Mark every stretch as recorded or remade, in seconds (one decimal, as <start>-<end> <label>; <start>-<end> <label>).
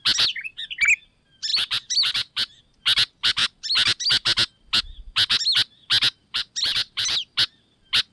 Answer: 0.0-1.5 recorded; 1.5-2.6 remade; 2.6-6.2 recorded; 6.2-7.3 remade; 7.3-8.1 recorded